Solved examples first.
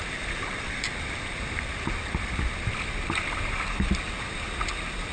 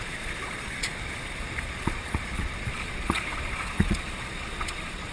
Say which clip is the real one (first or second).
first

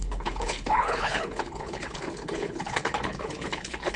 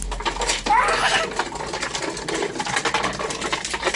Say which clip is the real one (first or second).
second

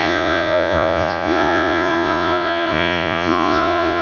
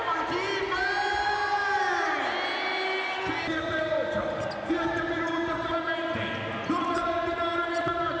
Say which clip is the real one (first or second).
second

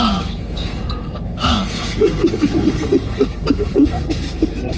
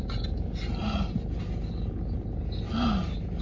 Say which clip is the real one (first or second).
second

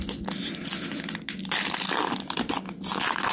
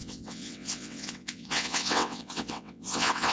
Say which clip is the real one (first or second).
first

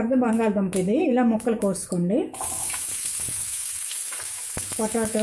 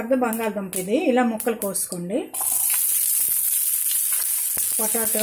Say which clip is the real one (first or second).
second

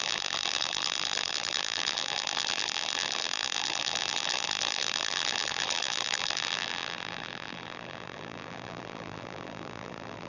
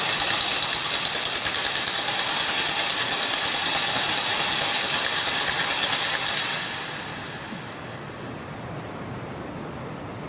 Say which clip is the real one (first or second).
second